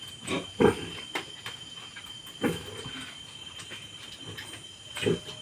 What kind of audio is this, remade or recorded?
recorded